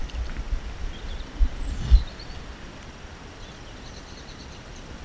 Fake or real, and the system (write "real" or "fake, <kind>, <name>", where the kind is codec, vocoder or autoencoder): real